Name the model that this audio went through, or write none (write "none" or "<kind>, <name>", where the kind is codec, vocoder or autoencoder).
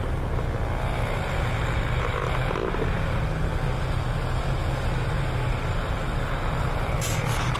none